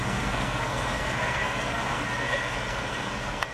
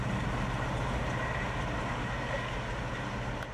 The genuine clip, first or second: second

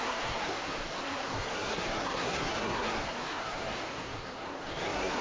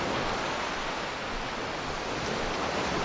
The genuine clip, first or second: second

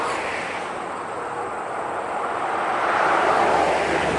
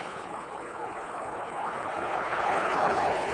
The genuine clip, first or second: first